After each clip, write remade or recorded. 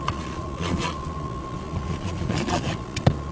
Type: remade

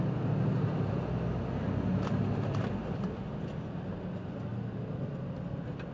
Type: recorded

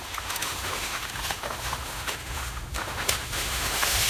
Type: remade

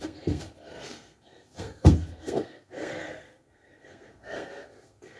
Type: remade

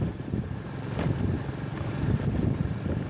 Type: recorded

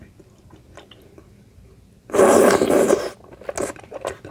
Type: recorded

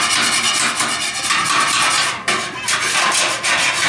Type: recorded